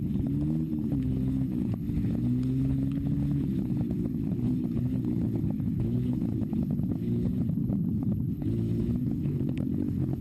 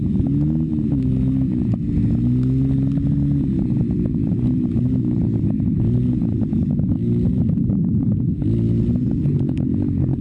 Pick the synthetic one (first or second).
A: first